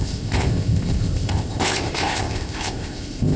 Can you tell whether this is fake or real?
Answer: fake